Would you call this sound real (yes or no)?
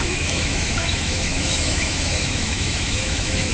no